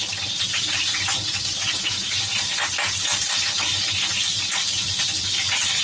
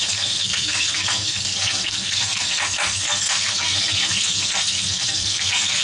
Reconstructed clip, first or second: second